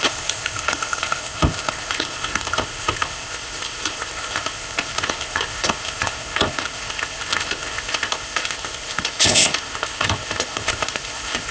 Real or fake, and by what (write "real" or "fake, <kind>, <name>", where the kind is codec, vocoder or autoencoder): fake, codec, ZipCodec